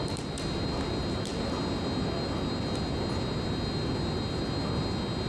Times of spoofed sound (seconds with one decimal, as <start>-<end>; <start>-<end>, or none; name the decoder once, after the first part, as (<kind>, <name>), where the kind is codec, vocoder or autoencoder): none